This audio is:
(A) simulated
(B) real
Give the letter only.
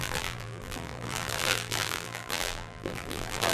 A